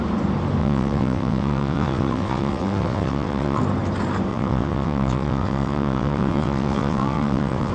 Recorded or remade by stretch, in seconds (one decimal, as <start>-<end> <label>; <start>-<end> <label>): 0.0-0.6 recorded; 0.6-3.6 remade; 3.6-4.3 recorded; 4.3-7.7 remade